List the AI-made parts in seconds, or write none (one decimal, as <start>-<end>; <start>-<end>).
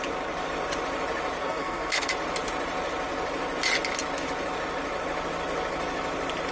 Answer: 1.4-2.1